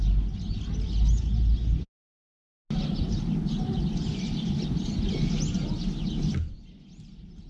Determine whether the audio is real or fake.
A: real